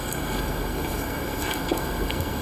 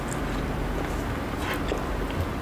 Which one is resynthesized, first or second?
first